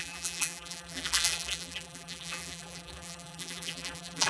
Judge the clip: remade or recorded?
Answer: remade